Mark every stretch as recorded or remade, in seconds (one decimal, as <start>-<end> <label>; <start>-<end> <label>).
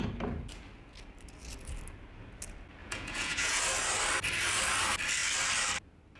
0.0-2.8 recorded; 2.8-3.6 remade; 3.6-6.2 recorded